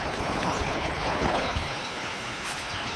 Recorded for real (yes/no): no